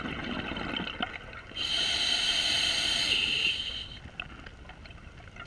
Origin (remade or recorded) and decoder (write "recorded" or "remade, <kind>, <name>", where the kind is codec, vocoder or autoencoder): recorded